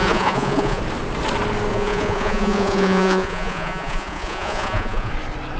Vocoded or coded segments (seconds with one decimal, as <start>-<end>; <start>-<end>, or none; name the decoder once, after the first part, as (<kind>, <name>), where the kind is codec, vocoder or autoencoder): 0.0-0.8 (vocoder, Vocos); 1.7-5.1